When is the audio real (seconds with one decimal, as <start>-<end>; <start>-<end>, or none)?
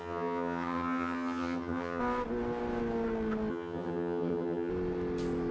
2.0-3.5; 4.7-5.5